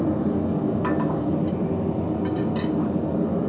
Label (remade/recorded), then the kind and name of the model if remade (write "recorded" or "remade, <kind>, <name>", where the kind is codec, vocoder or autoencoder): recorded